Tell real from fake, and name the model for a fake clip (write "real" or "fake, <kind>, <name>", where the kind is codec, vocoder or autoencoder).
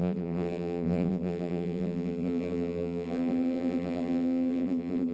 fake, vocoder, BigVGAN v2